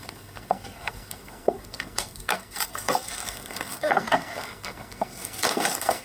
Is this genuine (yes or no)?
no